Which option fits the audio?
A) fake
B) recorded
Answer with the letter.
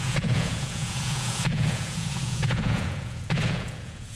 A